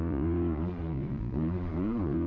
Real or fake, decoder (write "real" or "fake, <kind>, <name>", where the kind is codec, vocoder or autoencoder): fake, vocoder, Vocos